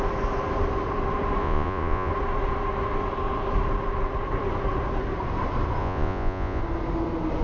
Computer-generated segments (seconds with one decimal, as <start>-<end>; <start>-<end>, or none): 1.4-2.1; 5.8-6.6